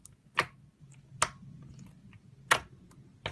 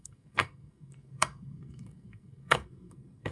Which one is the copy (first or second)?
second